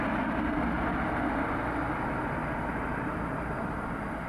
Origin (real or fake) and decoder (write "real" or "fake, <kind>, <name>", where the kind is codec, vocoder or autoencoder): real